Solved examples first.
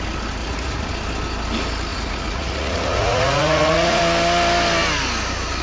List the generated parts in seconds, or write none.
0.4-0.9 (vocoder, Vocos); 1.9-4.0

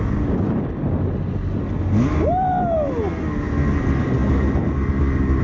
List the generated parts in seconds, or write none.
none

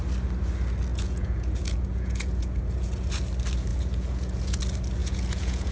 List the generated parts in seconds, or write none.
0.9-3.1 (vocoder, Vocos); 3.7-4.6; 5.0-5.7

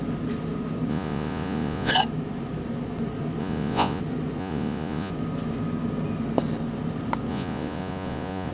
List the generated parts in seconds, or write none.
0.9-1.9 (vocoder, Vocos); 3.4-4.0; 4.4-5.1; 7.3-8.5

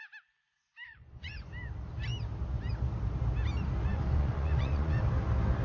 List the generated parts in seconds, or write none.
0.9-1.5 (vocoder, Vocos); 3.9-5.0

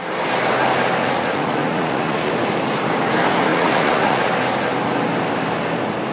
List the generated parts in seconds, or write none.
1.0-2.3 (vocoder, Vocos); 3.5-4.2

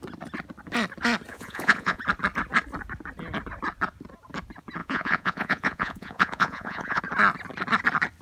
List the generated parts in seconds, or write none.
1.3-2.0 (vocoder, Vocos); 4.8-7.0

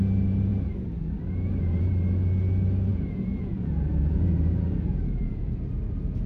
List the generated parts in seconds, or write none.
2.9-5.6 (vocoder, Vocos)